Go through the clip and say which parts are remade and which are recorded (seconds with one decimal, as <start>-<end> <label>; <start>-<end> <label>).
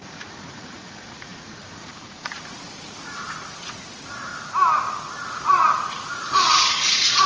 0.0-4.3 remade; 4.3-5.3 recorded; 5.3-7.3 remade